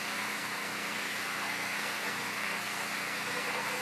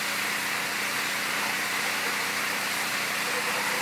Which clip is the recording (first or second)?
second